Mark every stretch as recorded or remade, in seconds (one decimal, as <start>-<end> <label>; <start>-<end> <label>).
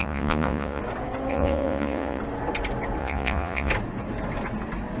0.0-0.8 remade; 0.8-1.3 recorded; 1.3-2.2 remade; 2.2-3.0 recorded; 3.0-3.7 remade; 3.7-5.0 recorded